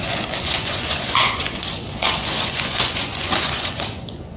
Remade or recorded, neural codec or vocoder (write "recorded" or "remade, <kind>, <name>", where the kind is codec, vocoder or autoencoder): remade, vocoder, Vocos